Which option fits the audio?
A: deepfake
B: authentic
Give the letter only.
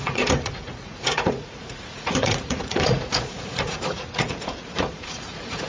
A